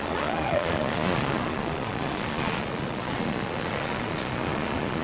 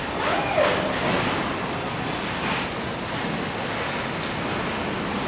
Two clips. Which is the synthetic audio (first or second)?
first